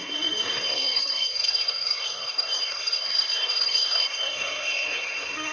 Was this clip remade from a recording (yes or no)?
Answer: yes